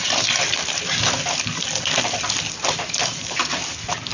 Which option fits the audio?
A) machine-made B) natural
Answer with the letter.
B